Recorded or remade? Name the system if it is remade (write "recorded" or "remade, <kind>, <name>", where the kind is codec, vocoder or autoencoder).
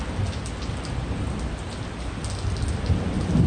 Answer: recorded